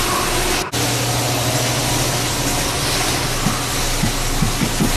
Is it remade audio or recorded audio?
recorded